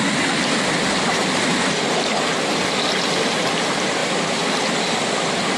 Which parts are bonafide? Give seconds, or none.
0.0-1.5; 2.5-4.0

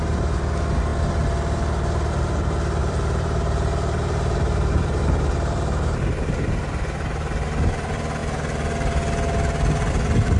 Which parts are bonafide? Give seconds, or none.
0.0-2.8; 6.5-10.4

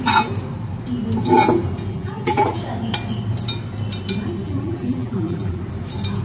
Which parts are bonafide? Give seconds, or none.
0.0-1.9; 2.6-4.4; 5.6-6.2

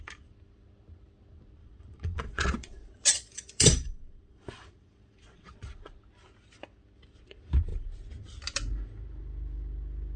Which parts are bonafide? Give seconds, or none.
0.0-1.6; 5.9-10.2

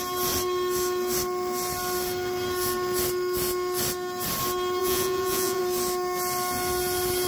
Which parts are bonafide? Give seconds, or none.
0.0-4.8; 5.6-7.3

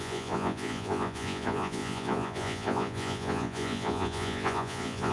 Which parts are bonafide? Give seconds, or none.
none